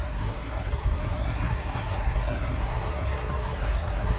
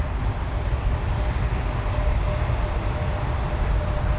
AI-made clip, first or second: first